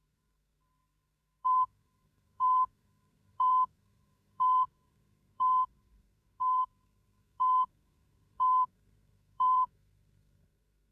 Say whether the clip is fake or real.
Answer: fake